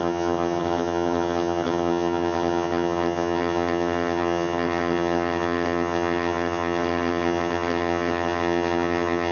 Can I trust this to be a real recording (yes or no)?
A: no